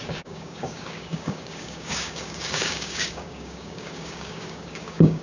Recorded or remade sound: remade